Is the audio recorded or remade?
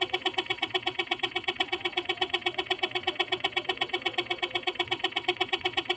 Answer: remade